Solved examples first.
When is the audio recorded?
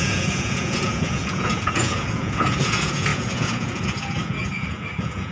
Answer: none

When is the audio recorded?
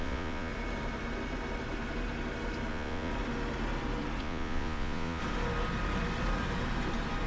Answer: 0.5-2.7; 3.1-4.2; 5.2-7.3